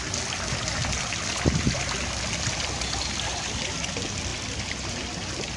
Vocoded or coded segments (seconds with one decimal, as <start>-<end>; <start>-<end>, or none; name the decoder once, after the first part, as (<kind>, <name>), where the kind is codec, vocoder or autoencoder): none